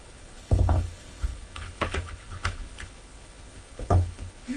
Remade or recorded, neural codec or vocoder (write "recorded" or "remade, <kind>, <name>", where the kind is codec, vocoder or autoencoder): remade, codec, HILCodec